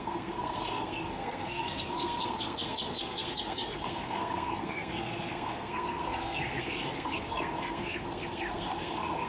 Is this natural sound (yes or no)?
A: no